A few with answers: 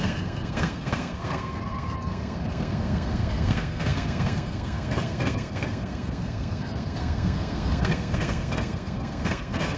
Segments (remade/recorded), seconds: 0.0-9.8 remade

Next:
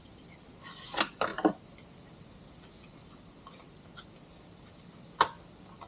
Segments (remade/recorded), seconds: 0.0-5.9 recorded